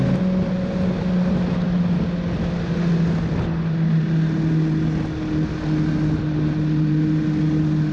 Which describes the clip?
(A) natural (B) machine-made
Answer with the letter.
A